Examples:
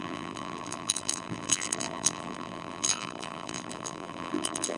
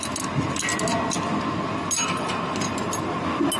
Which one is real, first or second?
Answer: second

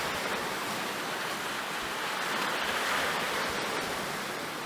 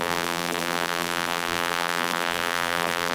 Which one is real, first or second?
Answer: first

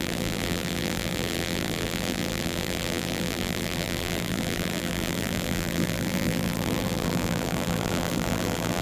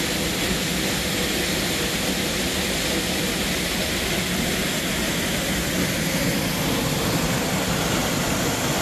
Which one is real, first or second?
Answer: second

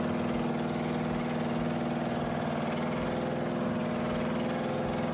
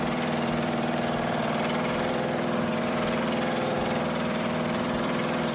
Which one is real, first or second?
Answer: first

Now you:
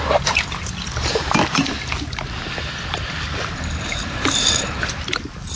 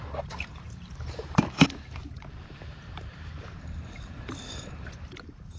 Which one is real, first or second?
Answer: first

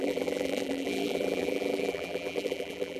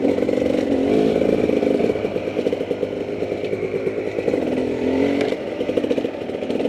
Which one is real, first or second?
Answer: second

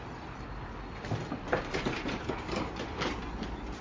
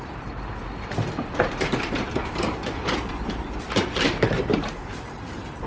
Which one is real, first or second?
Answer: first